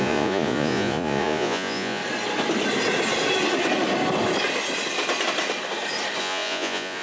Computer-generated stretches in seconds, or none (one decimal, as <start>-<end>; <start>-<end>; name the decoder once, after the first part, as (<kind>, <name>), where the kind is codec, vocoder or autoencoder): 0.0-2.0 (vocoder, Vocos); 6.2-7.0